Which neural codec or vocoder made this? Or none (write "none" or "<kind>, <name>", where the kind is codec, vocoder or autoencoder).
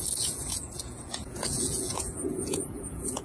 vocoder, Vocos